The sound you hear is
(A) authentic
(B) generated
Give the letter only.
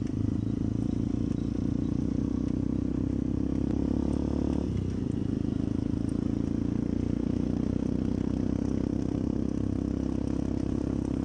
A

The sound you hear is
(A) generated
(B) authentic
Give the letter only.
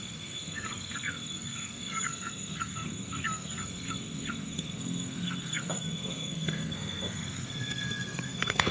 A